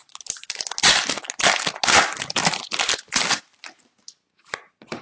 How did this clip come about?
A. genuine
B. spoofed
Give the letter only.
A